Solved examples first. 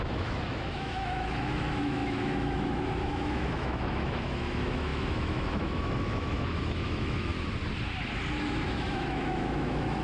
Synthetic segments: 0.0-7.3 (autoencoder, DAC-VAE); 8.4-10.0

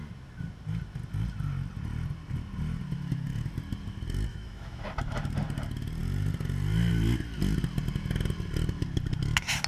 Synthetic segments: 4.3-4.8 (autoencoder, DAC-VAE)

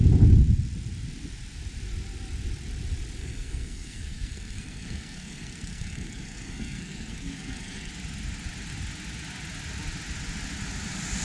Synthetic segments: 3.2-7.9 (codec, SNAC)

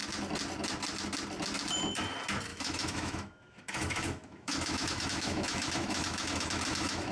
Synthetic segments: 2.5-7.1 (autoencoder, DAC-VAE)